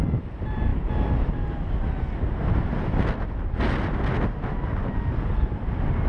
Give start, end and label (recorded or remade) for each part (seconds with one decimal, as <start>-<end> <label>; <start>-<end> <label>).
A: 0.0-6.1 recorded